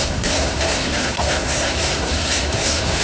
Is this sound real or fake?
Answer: fake